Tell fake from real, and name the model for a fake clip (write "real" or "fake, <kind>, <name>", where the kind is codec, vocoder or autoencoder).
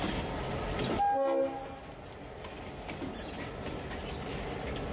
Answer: real